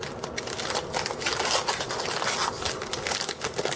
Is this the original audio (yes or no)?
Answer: yes